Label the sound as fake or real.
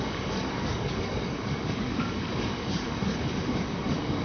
fake